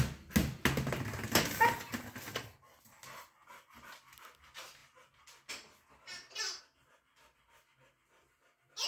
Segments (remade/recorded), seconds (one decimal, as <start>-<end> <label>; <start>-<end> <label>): 0.0-8.9 recorded